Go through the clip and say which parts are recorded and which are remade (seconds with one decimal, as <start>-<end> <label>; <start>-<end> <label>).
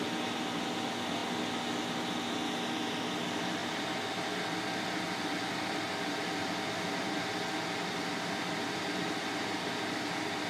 0.0-10.5 recorded